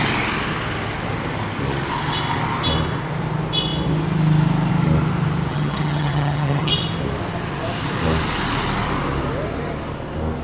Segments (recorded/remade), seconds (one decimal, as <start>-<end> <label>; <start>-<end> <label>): 0.0-5.5 recorded; 5.5-6.7 remade; 6.7-10.4 recorded